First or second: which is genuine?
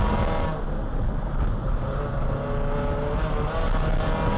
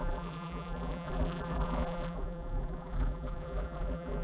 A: first